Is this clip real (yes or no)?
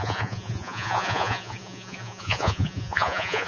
no